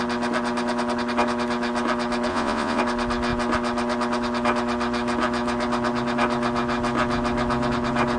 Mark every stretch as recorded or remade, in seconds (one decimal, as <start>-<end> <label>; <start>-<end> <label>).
0.0-2.3 recorded; 2.3-2.8 remade; 2.8-8.2 recorded